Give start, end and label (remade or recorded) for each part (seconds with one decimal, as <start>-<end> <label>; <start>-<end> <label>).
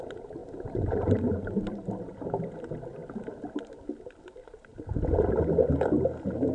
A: 0.0-0.4 recorded; 0.4-1.4 remade; 1.4-6.5 recorded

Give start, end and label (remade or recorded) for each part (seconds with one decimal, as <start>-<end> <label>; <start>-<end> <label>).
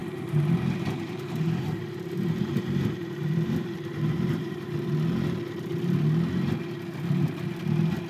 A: 0.0-4.9 remade; 4.9-8.1 recorded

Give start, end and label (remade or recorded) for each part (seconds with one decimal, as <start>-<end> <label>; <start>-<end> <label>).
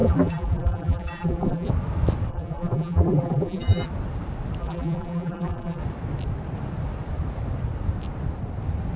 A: 0.0-1.7 remade; 1.7-2.3 recorded; 2.3-3.9 remade; 3.9-4.6 recorded; 4.6-5.8 remade; 5.8-9.0 recorded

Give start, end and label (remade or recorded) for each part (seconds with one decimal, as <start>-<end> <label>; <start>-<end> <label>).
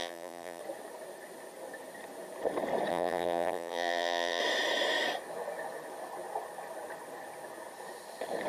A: 0.0-0.6 remade; 0.6-2.9 recorded; 2.9-4.4 remade; 4.4-8.5 recorded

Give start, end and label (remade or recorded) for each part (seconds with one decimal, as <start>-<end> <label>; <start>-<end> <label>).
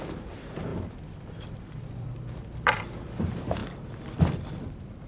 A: 0.0-0.7 recorded; 0.7-2.8 remade; 2.8-5.1 recorded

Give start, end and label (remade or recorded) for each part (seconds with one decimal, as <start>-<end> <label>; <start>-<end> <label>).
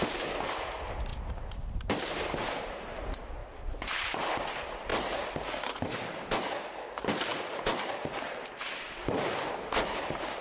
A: 0.0-3.4 recorded; 3.4-4.3 remade; 4.3-4.9 recorded; 4.9-6.5 remade; 6.5-10.4 recorded